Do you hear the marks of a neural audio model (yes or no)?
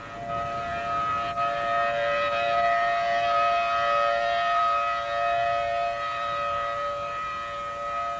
no